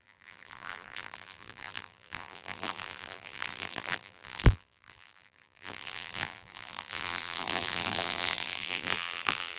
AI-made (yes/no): yes